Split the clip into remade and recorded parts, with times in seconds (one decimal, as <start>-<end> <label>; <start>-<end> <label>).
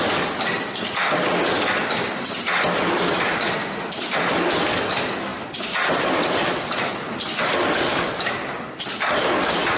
0.0-5.3 recorded; 5.3-7.3 remade; 7.3-9.8 recorded